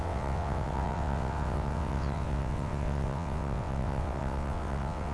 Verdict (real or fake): fake